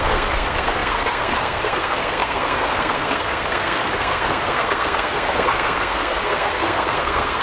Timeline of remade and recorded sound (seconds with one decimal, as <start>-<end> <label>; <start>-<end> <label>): 0.0-7.4 remade